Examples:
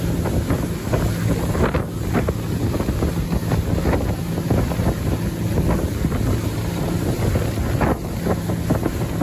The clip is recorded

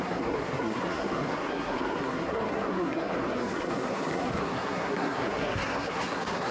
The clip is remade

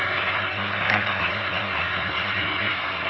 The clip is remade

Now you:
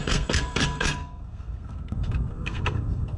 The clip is remade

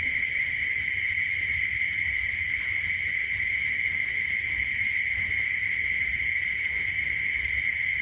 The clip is recorded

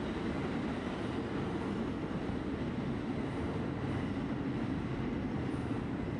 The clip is recorded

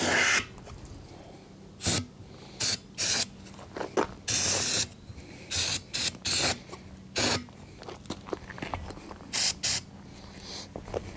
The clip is recorded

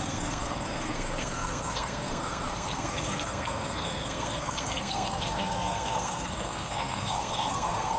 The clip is remade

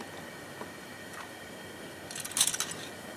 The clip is recorded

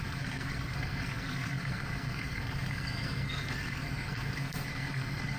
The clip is remade